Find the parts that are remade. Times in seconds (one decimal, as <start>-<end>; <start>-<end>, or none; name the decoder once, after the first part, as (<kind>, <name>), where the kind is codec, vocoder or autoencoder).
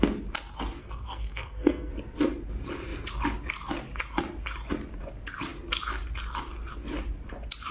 0.8-1.9 (codec, SNAC)